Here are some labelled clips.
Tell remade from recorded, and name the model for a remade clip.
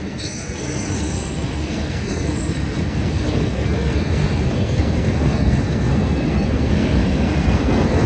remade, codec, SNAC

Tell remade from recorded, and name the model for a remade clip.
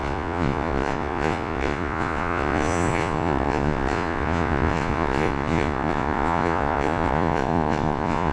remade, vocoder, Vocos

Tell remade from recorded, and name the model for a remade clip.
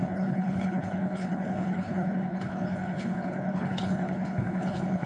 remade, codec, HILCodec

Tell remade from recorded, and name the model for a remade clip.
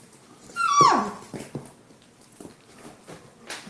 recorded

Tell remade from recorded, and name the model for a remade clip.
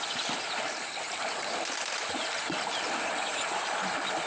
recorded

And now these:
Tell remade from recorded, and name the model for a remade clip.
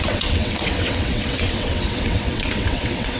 remade, vocoder, WaveNeXt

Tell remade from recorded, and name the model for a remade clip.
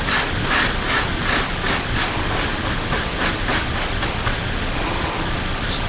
recorded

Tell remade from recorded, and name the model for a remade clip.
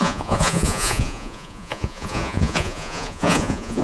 remade, vocoder, Vocos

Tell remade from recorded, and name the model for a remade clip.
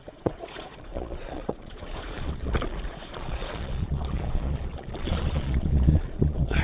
remade, vocoder, Vocos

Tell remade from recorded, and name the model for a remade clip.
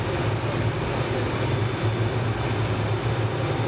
recorded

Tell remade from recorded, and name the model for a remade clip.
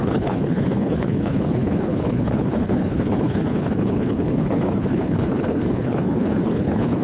remade, codec, HILCodec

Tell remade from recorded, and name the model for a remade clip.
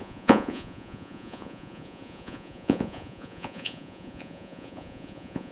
remade, vocoder, Vocos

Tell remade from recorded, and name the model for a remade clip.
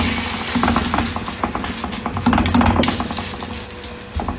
recorded